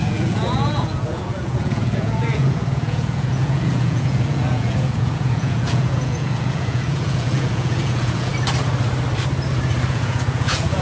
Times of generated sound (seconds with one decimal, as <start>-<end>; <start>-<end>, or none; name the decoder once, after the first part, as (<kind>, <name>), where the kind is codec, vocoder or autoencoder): 0.0-8.3 (vocoder, Vocos); 9.9-10.8